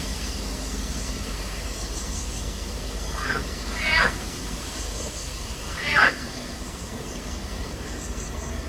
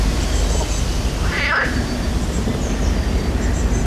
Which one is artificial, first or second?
first